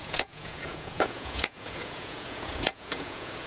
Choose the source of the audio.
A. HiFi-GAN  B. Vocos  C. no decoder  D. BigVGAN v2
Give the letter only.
B